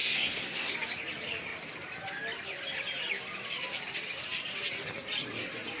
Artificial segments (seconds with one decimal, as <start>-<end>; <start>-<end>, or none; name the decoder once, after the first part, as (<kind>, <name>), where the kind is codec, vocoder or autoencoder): 0.0-0.7 (codec, SNAC)